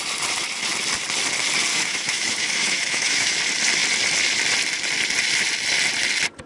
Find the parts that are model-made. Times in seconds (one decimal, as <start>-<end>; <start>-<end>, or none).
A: 1.7-3.4

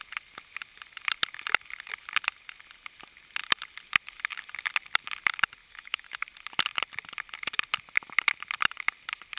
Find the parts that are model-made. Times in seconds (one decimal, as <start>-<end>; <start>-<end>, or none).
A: 5.6-6.2

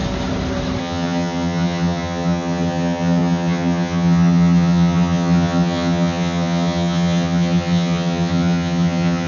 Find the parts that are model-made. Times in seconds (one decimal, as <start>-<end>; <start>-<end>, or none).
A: 0.8-9.3

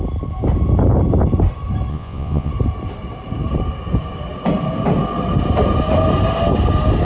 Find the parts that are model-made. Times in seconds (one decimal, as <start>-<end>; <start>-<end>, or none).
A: 1.9-2.5

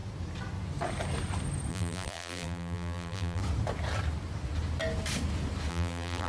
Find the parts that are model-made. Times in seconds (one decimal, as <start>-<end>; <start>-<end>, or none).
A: 1.7-3.4; 5.7-6.3

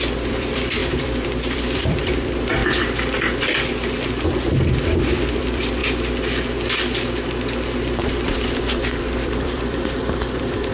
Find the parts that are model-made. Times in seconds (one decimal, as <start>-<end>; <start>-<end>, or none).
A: 0.0-2.6; 5.1-5.8; 9.0-10.7

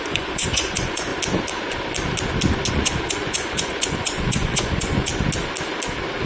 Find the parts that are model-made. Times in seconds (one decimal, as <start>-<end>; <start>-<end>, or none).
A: 0.0-1.1; 2.7-5.1